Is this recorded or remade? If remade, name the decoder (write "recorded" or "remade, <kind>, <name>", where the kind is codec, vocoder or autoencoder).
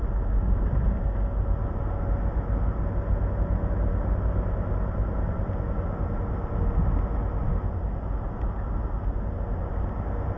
recorded